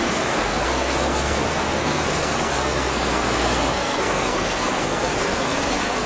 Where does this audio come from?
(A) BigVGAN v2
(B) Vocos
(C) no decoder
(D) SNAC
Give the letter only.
D